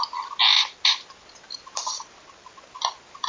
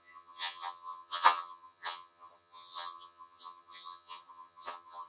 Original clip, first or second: first